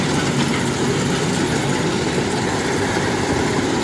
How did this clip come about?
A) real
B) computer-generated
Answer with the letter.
A